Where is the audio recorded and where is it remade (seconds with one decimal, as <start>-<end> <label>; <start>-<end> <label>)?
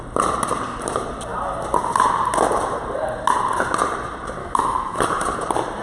0.0-4.4 recorded; 4.4-5.0 remade; 5.0-5.8 recorded